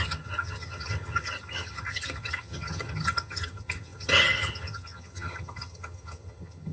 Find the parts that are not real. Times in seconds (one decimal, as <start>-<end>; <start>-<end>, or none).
0.0-6.7